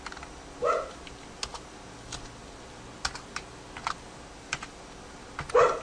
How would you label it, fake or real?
real